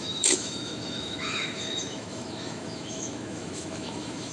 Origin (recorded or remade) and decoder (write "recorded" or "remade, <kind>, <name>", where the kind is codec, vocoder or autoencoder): remade, autoencoder, DAC-VAE